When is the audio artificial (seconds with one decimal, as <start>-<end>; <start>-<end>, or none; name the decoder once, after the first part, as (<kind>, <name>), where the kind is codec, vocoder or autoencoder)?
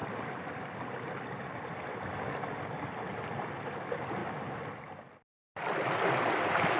none